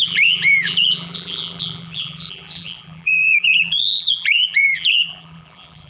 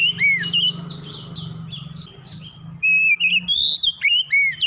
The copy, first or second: first